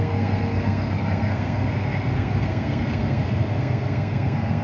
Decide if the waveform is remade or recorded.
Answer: remade